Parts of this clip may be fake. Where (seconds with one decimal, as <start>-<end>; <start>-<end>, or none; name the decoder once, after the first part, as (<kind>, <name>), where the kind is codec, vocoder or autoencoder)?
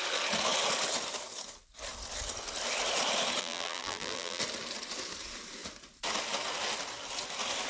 3.4-4.4 (vocoder, BigVGAN v2)